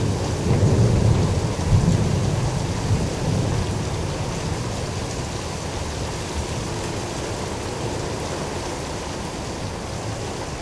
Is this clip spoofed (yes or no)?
no